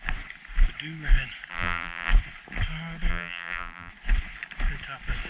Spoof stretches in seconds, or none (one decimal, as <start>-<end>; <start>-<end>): 1.5-2.1; 3.1-3.9